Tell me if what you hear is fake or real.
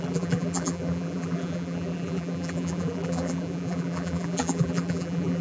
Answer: fake